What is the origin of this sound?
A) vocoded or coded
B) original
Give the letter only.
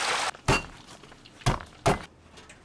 B